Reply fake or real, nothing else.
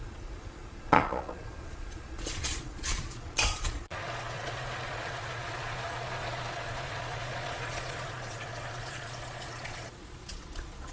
fake